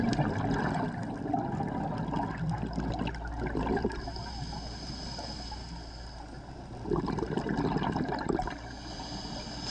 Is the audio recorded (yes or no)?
yes